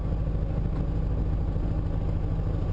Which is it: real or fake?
real